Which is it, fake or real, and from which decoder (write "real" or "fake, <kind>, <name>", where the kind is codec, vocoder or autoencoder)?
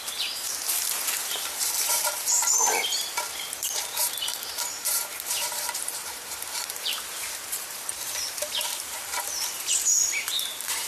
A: fake, vocoder, BigVGAN v2